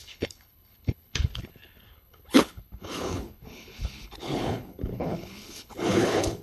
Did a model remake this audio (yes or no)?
yes